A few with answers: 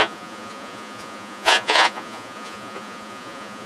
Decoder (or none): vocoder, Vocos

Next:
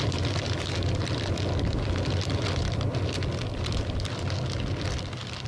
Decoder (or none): none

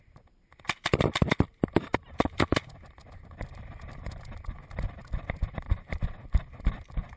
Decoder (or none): none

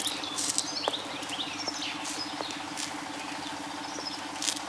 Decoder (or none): none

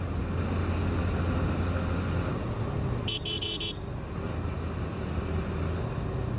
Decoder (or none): none